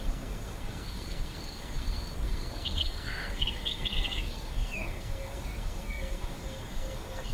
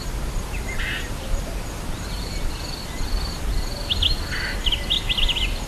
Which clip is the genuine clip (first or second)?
second